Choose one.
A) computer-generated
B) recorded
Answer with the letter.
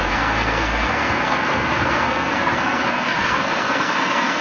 A